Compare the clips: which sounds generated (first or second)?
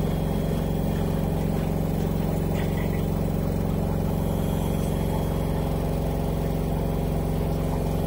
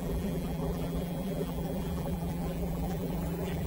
second